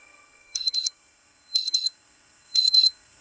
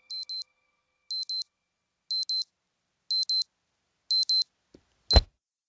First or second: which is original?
second